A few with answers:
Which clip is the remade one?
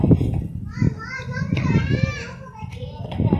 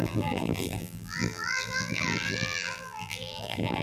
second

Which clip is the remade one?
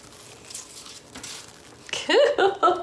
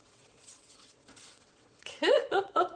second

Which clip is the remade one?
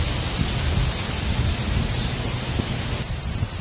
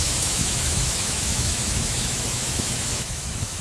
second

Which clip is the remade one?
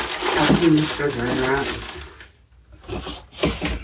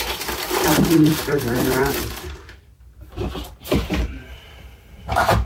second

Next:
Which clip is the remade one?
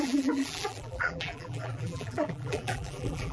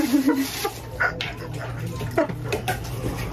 first